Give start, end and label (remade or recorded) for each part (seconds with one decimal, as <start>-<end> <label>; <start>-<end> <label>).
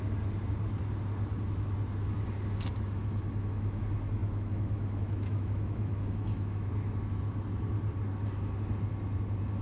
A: 0.0-2.7 recorded; 2.7-3.8 remade; 3.8-4.2 recorded; 4.2-6.7 remade; 6.7-9.6 recorded